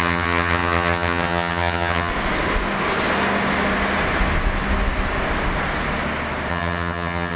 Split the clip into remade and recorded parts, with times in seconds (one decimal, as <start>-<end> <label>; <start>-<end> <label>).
0.0-2.1 remade; 2.1-6.5 recorded; 6.5-7.4 remade